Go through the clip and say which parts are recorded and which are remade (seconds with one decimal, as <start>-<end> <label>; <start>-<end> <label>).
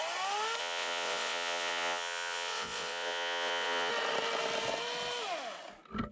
0.0-0.6 recorded; 0.6-3.9 remade; 3.9-6.1 recorded